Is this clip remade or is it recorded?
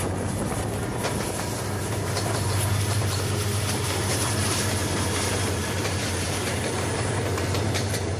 remade